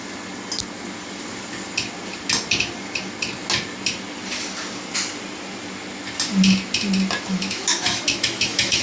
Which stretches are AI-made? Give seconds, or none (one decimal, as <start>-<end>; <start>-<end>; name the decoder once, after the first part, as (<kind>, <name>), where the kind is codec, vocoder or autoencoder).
7.3-8.8 (autoencoder, DAC-VAE)